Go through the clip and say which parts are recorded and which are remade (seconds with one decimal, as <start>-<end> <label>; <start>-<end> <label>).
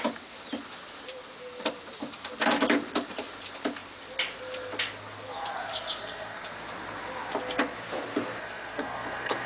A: 0.0-6.0 recorded; 6.0-6.5 remade; 6.5-8.4 recorded; 8.4-9.5 remade